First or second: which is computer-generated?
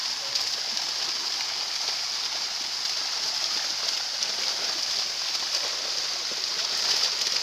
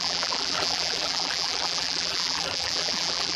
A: second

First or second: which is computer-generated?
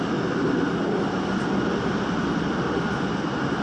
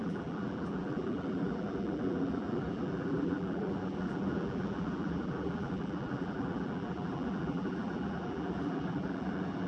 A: second